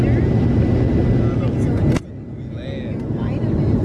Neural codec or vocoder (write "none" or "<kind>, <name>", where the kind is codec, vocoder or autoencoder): none